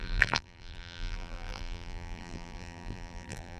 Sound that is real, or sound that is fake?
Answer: fake